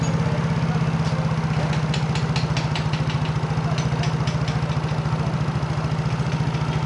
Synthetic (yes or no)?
no